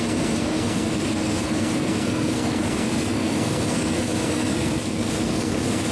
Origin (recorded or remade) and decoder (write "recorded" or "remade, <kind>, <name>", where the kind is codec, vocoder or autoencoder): remade, codec, SNAC